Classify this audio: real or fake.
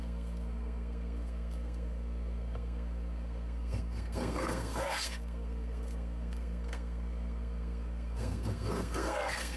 fake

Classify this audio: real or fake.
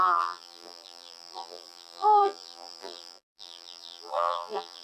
fake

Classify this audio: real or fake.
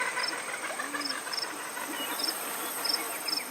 real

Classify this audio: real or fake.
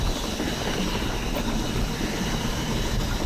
real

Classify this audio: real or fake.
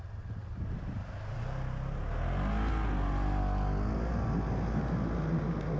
real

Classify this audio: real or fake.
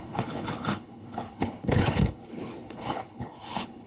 fake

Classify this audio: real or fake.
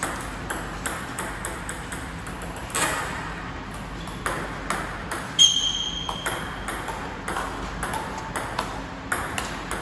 real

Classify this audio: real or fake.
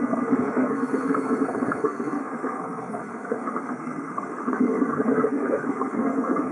fake